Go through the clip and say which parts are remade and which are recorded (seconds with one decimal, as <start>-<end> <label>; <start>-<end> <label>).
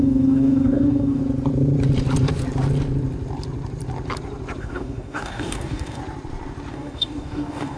0.0-1.2 remade; 1.2-4.6 recorded; 4.6-6.0 remade; 6.0-6.7 recorded; 6.7-7.8 remade